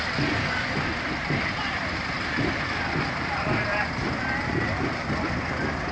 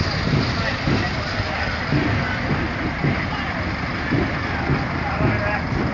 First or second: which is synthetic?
first